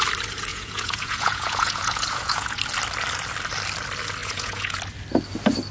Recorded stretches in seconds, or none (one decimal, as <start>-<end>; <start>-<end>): 0.0-0.5; 2.6-4.2; 4.8-5.7